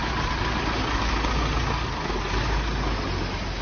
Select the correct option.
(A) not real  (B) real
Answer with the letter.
B